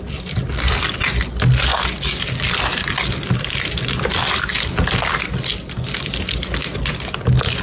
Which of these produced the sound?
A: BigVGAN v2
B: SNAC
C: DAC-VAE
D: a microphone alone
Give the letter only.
D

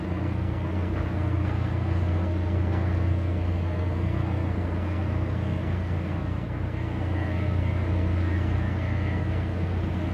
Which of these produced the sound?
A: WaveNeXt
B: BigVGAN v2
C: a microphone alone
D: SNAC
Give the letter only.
D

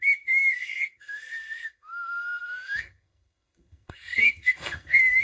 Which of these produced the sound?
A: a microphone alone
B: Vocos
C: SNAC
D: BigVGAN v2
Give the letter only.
C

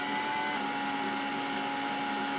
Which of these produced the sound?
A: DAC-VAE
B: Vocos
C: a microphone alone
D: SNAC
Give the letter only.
C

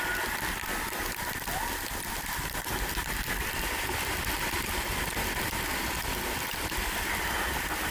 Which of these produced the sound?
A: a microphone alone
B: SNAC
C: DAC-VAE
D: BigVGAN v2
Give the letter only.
A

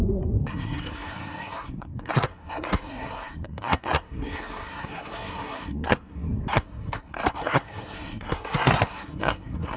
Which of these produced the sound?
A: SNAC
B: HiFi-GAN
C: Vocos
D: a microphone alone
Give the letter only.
A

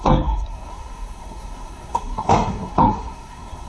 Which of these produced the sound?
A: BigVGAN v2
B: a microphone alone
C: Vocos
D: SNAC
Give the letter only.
D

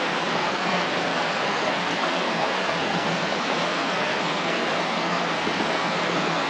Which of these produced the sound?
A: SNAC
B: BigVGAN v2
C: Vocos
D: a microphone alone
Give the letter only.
A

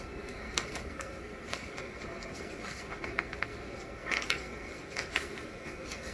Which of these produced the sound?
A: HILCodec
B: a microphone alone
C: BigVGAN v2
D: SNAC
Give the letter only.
D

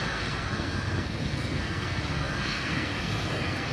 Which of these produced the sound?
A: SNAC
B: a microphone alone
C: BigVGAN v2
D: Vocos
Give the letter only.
A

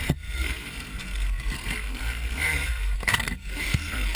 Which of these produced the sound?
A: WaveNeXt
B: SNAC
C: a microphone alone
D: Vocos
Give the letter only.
B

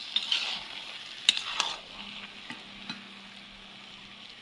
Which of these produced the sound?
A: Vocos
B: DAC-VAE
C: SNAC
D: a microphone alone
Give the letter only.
D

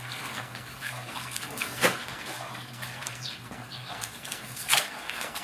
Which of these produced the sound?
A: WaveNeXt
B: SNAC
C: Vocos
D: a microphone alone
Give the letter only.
B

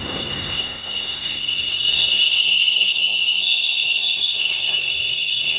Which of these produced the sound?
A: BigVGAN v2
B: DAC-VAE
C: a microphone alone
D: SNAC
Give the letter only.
D